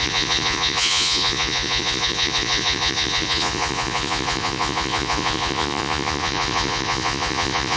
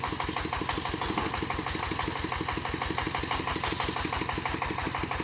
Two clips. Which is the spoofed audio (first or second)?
first